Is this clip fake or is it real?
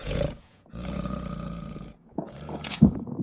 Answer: fake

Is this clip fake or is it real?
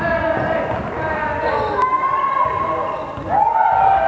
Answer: real